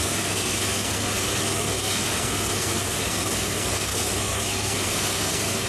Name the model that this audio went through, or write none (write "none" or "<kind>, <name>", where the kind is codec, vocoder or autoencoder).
codec, SNAC